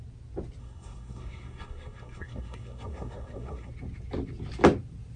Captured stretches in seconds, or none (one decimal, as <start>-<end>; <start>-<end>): 0.0-0.6; 3.7-5.2